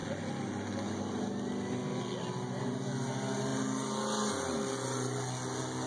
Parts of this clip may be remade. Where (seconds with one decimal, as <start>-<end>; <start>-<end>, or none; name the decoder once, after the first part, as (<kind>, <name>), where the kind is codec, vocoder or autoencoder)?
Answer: none